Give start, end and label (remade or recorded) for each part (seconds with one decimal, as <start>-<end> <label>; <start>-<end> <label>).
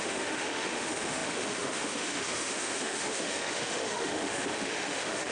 0.0-5.3 remade